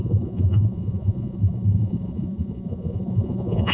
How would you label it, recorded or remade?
remade